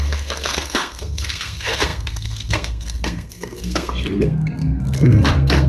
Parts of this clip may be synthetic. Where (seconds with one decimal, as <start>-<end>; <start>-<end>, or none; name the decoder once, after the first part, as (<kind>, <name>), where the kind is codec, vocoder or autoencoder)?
0.0-5.7 (codec, SNAC)